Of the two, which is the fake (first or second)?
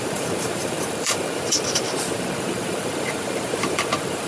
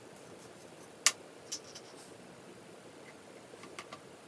first